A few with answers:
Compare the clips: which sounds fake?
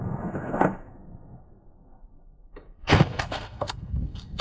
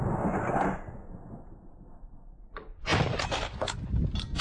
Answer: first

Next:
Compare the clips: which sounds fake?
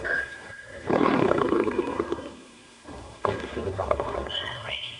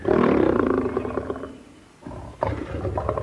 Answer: first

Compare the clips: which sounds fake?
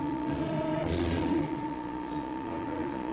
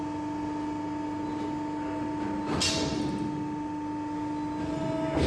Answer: first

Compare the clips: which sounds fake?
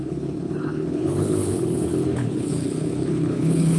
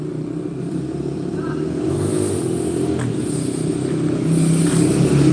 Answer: first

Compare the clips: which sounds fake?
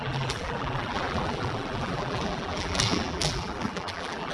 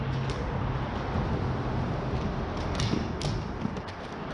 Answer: first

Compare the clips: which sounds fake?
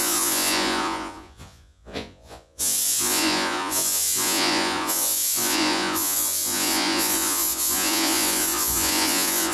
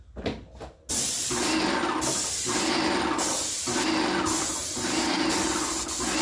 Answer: first